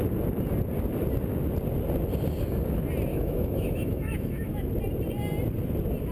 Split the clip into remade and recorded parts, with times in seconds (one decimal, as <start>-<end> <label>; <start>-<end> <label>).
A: 0.0-3.1 recorded; 3.1-4.7 remade; 4.7-6.1 recorded

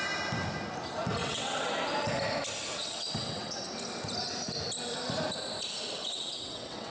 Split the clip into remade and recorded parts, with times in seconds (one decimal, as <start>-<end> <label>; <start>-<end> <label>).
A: 0.0-1.2 recorded; 1.2-1.7 remade; 1.7-2.7 recorded; 2.7-3.6 remade; 3.6-6.0 recorded; 6.0-6.9 remade

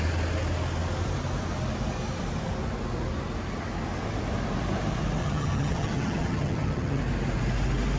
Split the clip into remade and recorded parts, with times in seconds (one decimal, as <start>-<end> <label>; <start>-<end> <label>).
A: 0.0-5.2 recorded; 5.2-7.0 remade; 7.0-8.0 recorded